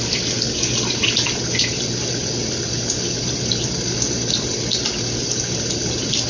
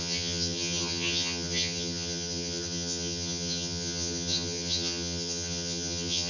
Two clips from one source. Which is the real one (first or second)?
first